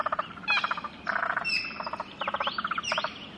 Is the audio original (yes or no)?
yes